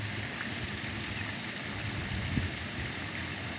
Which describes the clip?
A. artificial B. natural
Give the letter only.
B